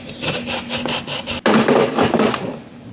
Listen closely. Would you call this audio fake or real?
real